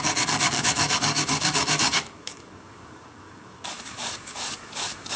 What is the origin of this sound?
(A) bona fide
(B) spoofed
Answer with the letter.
B